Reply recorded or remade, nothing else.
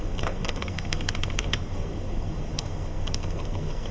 remade